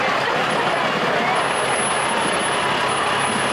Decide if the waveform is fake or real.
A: real